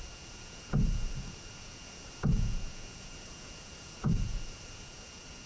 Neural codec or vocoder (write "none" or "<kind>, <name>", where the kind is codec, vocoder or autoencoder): vocoder, Vocos